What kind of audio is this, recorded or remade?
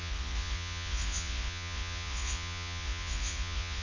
remade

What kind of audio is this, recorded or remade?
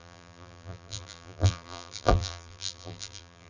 remade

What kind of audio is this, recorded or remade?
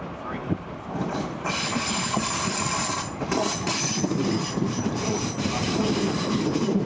remade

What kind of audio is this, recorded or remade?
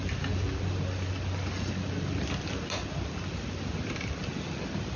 recorded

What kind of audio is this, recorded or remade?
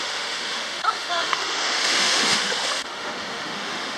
remade